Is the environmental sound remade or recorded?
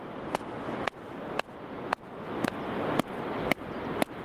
recorded